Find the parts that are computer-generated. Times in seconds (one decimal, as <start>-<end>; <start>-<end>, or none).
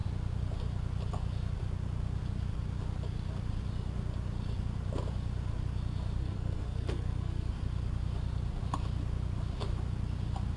6.2-7.5